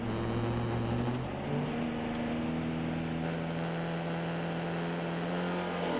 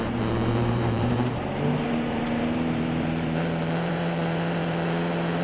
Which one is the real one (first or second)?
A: first